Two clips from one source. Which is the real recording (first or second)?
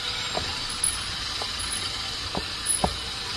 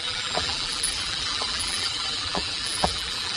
first